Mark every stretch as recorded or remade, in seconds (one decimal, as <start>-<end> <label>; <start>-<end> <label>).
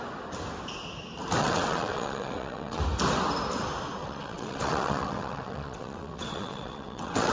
0.0-1.4 recorded; 1.4-2.8 remade; 2.8-4.0 recorded; 4.0-7.3 remade